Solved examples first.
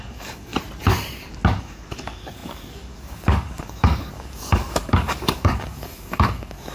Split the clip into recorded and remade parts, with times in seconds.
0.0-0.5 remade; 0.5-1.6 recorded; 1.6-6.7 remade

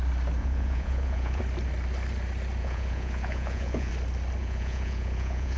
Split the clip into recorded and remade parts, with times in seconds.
0.0-0.4 recorded; 0.4-1.4 remade; 1.4-2.6 recorded; 2.6-3.9 remade; 3.9-4.4 recorded; 4.4-5.6 remade